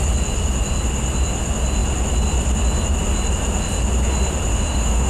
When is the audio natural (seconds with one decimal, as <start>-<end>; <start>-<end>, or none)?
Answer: 0.0-4.5